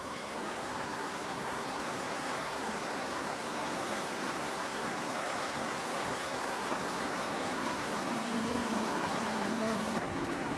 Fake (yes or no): yes